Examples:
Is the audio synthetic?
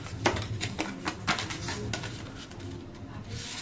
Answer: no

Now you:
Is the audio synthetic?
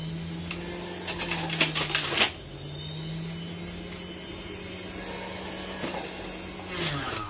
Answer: no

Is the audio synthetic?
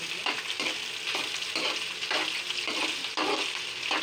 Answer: no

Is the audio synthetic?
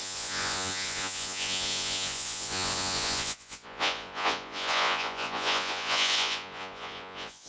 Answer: yes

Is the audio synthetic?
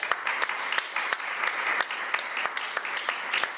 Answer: no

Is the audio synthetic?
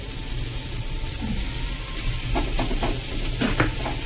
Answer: no